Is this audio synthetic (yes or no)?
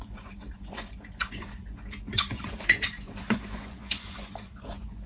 yes